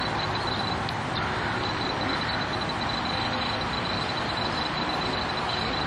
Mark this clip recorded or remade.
recorded